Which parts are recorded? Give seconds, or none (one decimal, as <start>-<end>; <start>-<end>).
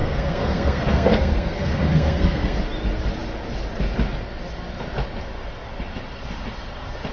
2.6-7.1